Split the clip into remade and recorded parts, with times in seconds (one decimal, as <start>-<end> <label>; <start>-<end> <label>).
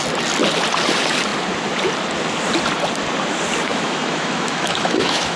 0.0-3.7 recorded; 3.7-5.4 remade